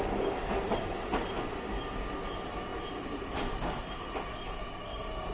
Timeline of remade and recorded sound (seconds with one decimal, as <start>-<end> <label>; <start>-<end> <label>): 0.0-2.7 recorded; 2.7-4.1 remade; 4.1-5.3 recorded